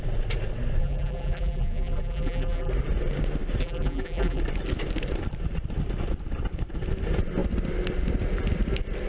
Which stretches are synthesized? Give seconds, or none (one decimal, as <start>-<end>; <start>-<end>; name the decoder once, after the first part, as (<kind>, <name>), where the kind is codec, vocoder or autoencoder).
0.8-2.7 (vocoder, BigVGAN v2); 3.6-4.4